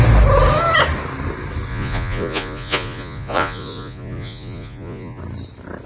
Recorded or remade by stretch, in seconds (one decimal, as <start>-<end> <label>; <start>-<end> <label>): 0.0-1.7 recorded; 1.7-5.2 remade; 5.2-5.9 recorded